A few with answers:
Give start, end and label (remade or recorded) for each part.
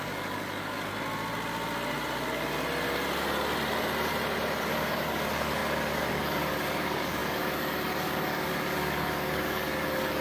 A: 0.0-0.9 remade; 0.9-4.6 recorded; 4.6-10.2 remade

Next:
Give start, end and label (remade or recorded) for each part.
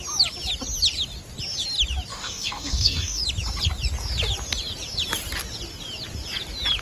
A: 0.0-2.1 recorded; 2.1-3.2 remade; 3.2-6.8 recorded